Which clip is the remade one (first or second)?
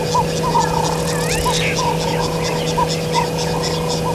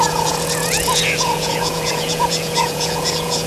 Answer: second